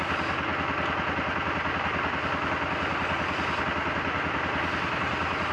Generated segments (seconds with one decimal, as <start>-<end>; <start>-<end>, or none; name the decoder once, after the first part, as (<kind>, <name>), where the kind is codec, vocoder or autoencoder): none